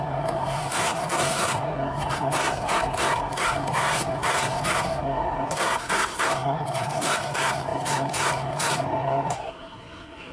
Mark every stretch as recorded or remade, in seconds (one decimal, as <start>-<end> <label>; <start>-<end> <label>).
0.0-10.3 remade